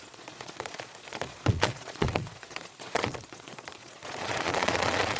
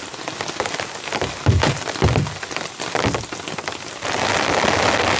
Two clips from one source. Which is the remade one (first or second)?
first